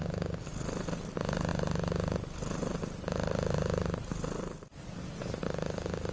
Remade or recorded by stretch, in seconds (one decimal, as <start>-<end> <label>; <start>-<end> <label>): 0.0-6.1 recorded